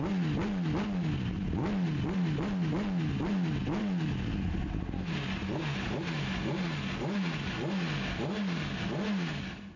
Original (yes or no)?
yes